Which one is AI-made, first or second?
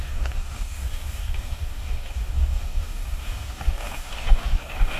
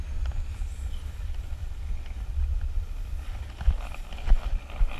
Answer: first